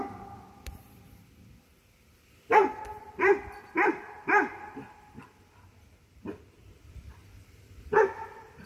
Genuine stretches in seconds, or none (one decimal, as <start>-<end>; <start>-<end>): none